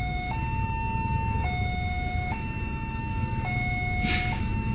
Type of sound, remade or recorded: remade